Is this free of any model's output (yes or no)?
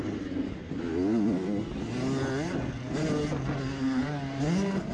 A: yes